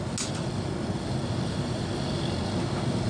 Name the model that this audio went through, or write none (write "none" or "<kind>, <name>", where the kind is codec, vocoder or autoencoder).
none